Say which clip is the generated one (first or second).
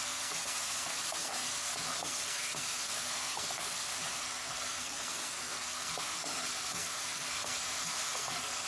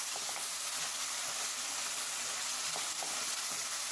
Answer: first